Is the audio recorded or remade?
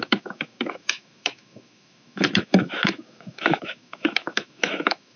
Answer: remade